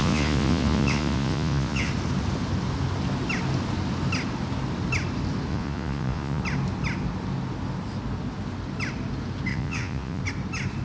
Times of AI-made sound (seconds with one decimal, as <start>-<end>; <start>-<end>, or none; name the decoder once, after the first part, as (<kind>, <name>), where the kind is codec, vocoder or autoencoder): 0.0-1.9 (vocoder, Vocos); 5.5-6.4; 9.5-10.2